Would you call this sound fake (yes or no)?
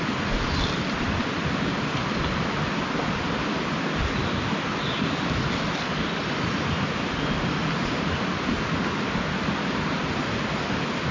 no